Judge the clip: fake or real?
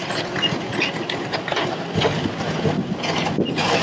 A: real